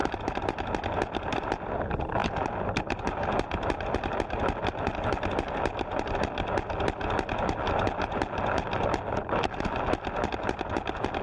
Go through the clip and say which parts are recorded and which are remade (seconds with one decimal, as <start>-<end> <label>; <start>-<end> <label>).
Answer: 0.0-11.2 recorded